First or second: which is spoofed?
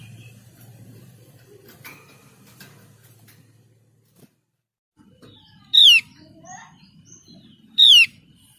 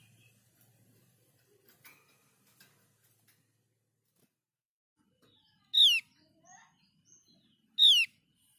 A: first